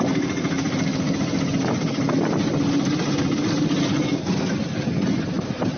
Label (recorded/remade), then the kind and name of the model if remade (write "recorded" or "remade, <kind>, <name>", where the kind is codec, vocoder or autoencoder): recorded